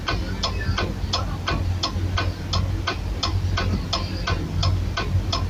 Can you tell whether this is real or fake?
real